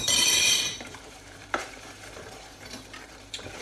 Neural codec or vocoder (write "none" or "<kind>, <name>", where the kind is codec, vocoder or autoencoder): vocoder, BigVGAN v2